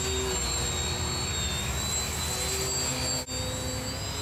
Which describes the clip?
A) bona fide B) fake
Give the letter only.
A